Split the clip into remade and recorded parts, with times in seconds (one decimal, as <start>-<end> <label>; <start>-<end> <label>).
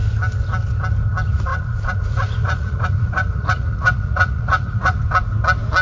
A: 0.0-1.5 recorded; 1.5-5.0 remade; 5.0-5.8 recorded